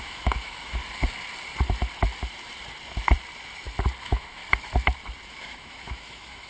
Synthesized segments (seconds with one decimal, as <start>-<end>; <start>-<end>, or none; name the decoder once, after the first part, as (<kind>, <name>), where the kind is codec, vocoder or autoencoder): 0.0-0.8 (autoencoder, DAC-VAE); 4.0-4.4; 5.3-6.5

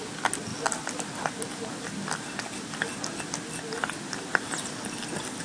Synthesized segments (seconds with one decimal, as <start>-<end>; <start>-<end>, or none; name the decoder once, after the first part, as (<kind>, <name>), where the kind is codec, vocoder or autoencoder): none

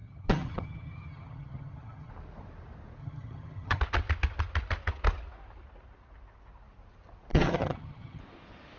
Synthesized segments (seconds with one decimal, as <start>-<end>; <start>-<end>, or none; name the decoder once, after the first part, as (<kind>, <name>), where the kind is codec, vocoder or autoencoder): 0.0-2.1 (vocoder, HiFi-GAN); 3.0-3.8; 7.3-8.2

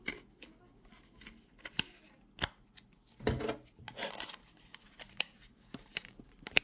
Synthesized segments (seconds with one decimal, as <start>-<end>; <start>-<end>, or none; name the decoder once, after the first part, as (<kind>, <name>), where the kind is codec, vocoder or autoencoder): 4.4-6.6 (vocoder, BigVGAN v2)